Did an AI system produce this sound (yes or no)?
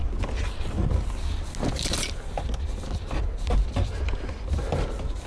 no